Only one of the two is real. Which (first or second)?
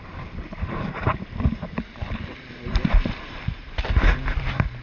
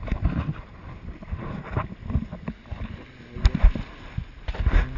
second